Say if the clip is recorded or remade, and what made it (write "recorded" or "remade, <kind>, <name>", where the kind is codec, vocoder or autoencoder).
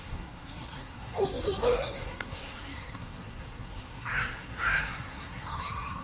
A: remade, codec, SNAC